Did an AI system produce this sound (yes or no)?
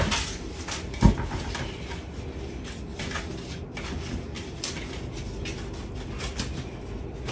no